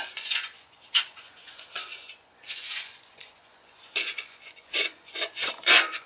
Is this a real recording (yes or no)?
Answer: no